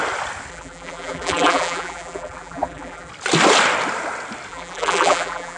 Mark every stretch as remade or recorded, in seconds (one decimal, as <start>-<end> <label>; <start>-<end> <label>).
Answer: 0.0-0.5 recorded; 0.5-3.1 remade; 3.1-4.5 recorded; 4.5-5.6 remade